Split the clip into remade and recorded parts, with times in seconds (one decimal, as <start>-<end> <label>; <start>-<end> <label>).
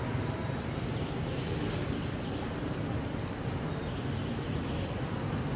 0.0-5.6 recorded